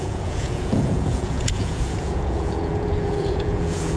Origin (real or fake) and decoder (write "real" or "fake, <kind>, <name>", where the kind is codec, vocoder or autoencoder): fake, vocoder, Vocos